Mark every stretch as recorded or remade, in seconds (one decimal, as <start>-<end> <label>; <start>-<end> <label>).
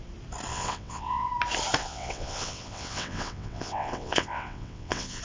0.0-0.5 recorded; 0.5-1.3 remade; 1.3-1.8 recorded; 1.8-5.2 remade